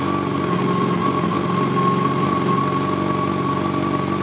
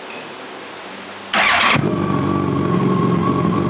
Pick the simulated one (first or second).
second